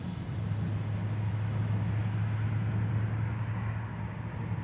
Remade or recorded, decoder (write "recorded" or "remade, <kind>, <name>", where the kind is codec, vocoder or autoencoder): recorded